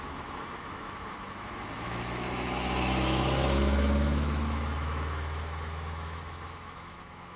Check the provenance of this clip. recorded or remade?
remade